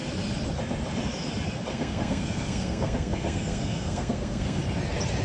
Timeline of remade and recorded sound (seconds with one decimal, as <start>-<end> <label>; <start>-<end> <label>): 0.0-1.7 recorded; 1.7-4.6 remade; 4.6-5.2 recorded